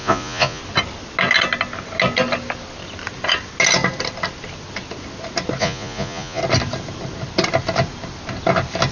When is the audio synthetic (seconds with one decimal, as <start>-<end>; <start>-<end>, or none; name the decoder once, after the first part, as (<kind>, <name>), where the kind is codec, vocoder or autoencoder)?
0.0-0.6 (vocoder, Vocos); 5.6-6.4